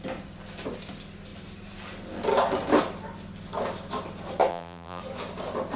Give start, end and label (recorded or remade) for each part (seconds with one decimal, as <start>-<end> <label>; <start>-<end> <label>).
0.0-4.5 recorded; 4.5-5.0 remade; 5.0-5.8 recorded